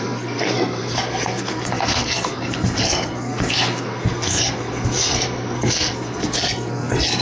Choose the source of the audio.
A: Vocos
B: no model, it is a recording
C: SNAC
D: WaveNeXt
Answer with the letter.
C